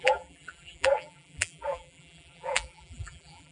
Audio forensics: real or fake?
fake